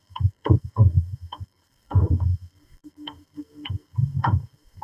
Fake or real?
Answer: fake